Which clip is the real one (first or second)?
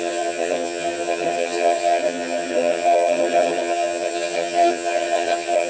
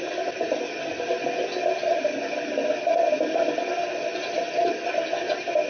second